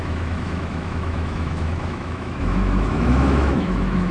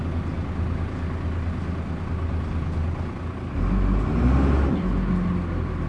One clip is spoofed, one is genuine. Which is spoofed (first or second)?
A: first